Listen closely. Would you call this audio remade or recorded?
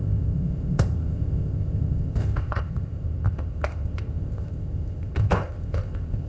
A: remade